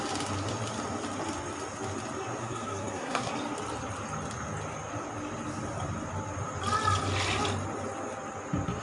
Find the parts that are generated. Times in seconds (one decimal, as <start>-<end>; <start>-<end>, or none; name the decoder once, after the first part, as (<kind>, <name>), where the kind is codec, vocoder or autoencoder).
2.4-3.3 (codec, SNAC)